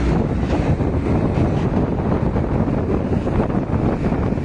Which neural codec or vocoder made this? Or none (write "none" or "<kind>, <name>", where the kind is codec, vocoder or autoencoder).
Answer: none